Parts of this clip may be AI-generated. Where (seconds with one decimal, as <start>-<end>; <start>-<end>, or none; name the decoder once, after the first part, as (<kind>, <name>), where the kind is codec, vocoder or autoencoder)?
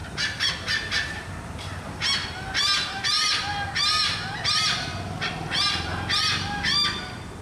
0.0-3.3 (vocoder, BigVGAN v2); 3.8-4.9